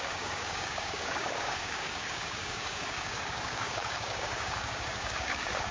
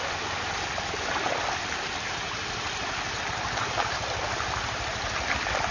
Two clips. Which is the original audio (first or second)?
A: second